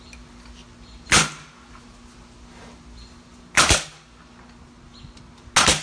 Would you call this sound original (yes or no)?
yes